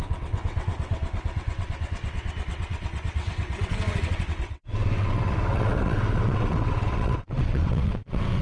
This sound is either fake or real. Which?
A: fake